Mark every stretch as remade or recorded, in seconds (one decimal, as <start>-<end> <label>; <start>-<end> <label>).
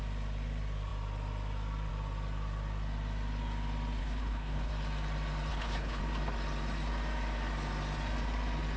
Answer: 0.0-4.0 recorded; 4.0-4.7 remade; 4.7-5.5 recorded; 5.5-6.0 remade; 6.0-8.8 recorded